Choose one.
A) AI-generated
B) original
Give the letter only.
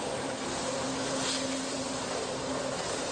B